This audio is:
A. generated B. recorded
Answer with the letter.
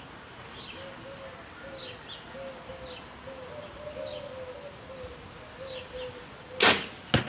B